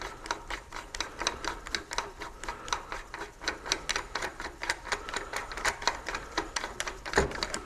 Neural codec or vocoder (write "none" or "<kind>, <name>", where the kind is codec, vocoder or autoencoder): none